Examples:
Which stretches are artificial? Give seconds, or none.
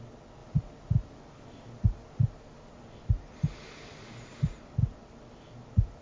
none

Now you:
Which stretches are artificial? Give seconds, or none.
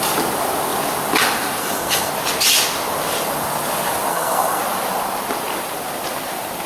1.6-2.1; 4.1-4.6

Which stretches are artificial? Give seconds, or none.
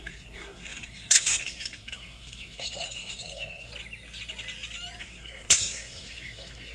0.0-3.7; 5.0-6.7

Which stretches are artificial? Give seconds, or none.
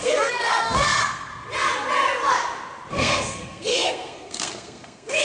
0.0-1.3; 2.9-5.2